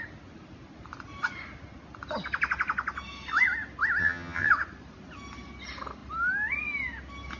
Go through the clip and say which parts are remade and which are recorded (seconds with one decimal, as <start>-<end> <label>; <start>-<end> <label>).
0.0-4.0 recorded; 4.0-4.5 remade; 4.5-7.4 recorded